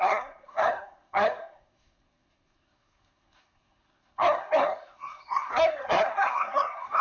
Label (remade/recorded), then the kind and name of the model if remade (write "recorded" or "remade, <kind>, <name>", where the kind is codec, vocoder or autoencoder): remade, codec, SNAC